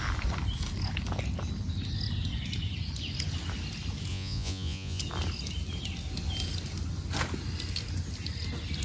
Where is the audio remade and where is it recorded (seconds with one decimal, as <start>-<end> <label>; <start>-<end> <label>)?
0.0-4.1 recorded; 4.1-5.0 remade; 5.0-8.8 recorded